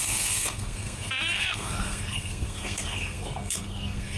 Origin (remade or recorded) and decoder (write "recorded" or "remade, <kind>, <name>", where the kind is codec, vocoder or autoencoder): remade, codec, SNAC